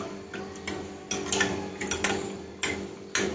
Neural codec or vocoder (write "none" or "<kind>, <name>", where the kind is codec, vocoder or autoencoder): none